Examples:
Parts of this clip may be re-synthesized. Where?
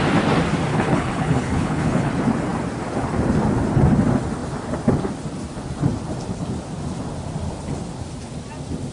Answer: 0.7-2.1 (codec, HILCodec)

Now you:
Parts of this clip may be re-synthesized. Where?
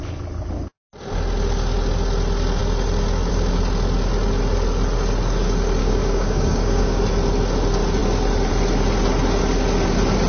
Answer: 5.8-7.0 (codec, DAC)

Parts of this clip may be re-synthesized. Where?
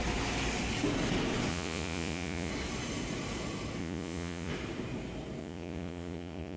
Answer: 1.5-2.5 (vocoder, Vocos); 3.8-4.5; 5.4-6.6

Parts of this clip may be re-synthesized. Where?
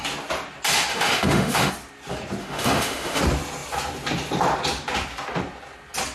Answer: 0.9-1.7 (autoencoder, DAC-VAE); 2.4-3.2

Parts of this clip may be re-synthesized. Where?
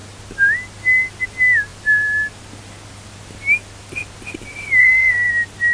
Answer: 4.8-5.3 (codec, SNAC)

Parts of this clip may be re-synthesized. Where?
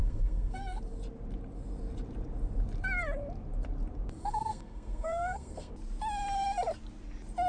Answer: 0.0-0.8 (codec, SNAC); 4.2-5.7